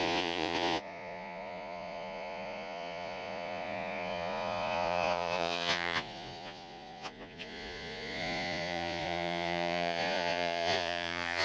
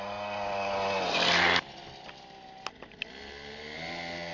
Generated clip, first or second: first